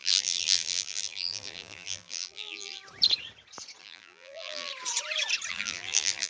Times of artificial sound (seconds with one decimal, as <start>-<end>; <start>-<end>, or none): 0.0-2.8; 3.8-4.7; 5.5-6.3